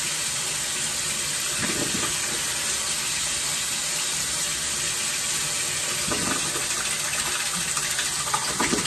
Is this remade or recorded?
recorded